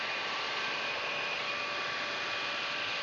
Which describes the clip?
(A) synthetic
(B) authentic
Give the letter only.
A